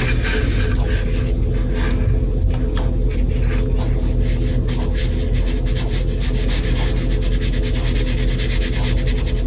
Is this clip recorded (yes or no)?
yes